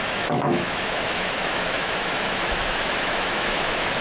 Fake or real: fake